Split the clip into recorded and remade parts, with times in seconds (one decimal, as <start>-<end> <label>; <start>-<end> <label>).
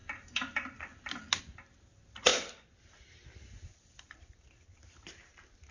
0.0-5.7 recorded